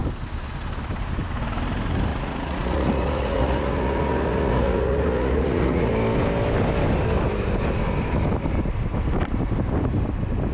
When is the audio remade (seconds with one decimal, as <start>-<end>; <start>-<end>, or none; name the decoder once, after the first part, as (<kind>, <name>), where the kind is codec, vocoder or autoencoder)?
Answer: 2.1-5.9 (vocoder, Vocos)